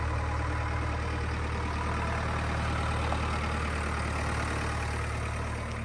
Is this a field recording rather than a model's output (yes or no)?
yes